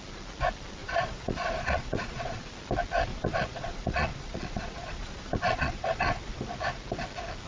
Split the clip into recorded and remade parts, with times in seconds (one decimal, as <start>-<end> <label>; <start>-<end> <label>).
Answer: 0.0-0.8 recorded; 0.8-2.5 remade; 2.5-3.1 recorded; 3.1-6.4 remade; 6.4-7.5 recorded